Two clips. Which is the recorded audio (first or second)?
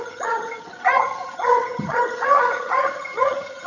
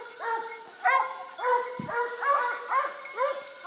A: second